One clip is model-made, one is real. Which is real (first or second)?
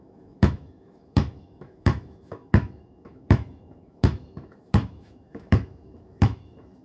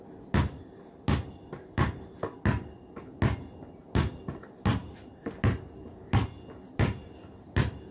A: second